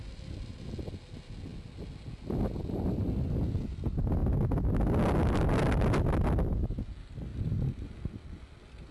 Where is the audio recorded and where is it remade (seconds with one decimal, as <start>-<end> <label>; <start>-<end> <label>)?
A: 0.0-8.9 recorded